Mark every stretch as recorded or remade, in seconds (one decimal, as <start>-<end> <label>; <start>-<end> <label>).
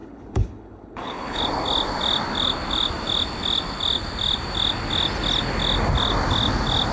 0.0-1.4 remade; 1.4-6.9 recorded